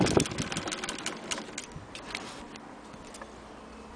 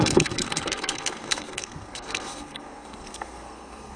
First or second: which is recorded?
first